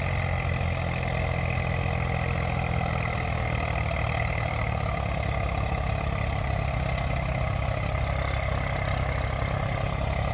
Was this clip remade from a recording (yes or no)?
no